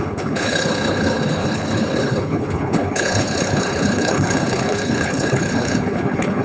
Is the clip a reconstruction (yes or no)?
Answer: yes